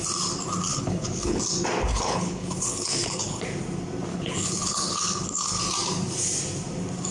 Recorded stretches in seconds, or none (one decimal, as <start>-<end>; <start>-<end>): 0.0-0.7; 1.4-1.9; 3.4-4.1; 5.6-7.1